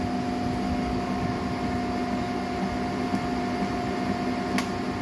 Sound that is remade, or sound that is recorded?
recorded